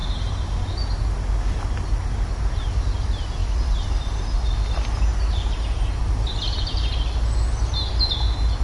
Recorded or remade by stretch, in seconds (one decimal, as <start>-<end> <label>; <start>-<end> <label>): 0.0-8.6 recorded